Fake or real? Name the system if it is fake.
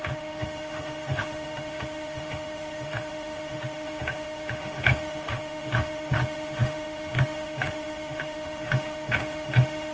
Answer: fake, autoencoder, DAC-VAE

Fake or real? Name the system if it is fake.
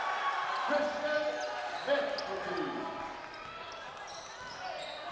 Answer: real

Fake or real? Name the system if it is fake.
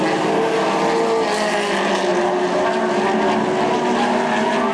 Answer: real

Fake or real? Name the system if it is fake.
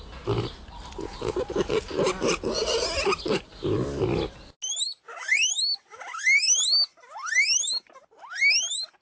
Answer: real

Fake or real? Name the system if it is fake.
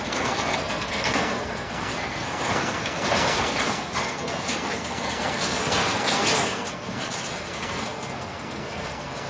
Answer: fake, codec, SNAC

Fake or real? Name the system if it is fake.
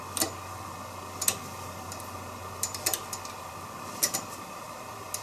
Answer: real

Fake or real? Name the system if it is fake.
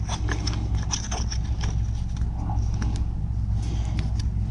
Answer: real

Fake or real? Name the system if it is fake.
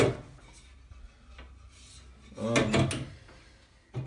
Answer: real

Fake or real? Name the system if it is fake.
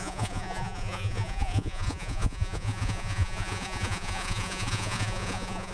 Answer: fake, vocoder, Vocos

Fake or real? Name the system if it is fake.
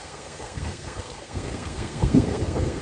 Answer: fake, codec, SNAC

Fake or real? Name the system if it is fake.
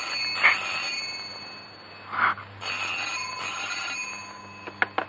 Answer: real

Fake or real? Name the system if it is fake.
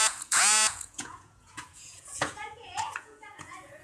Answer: fake, vocoder, Vocos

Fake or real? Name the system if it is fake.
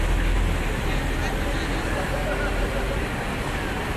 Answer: real